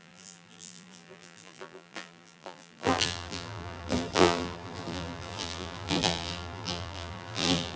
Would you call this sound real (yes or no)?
no